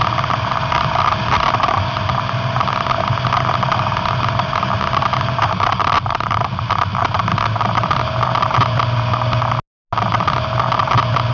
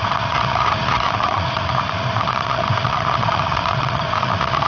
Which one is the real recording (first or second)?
first